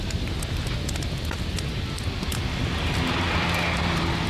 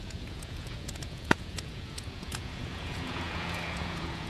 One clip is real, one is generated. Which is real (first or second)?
first